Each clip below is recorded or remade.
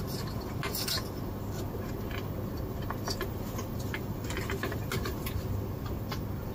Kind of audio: recorded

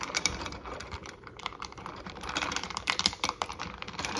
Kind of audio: remade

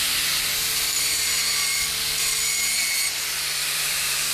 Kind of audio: remade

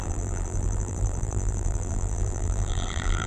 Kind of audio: remade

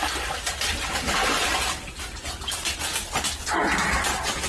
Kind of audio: recorded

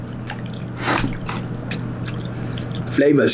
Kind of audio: recorded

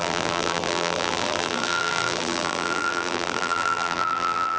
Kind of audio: remade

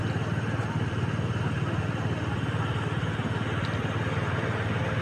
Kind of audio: recorded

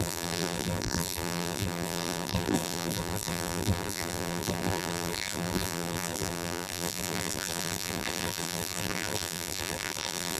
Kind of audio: remade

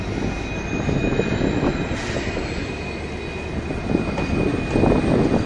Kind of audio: recorded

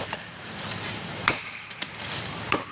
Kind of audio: remade